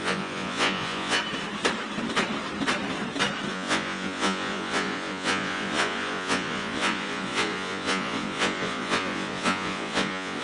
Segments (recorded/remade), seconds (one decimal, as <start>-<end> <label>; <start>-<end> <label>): 0.0-1.2 remade; 1.2-3.5 recorded; 3.5-10.4 remade